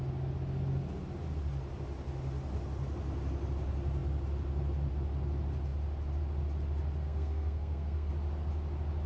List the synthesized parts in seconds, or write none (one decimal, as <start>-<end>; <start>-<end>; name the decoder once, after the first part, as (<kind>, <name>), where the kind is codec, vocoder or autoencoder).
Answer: 7.0-8.1 (codec, SNAC)